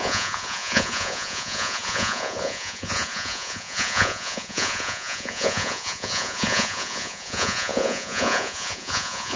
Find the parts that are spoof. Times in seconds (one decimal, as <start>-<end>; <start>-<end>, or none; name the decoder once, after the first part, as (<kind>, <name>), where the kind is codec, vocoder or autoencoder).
0.0-9.4 (vocoder, Vocos)